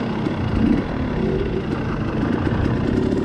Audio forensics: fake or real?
real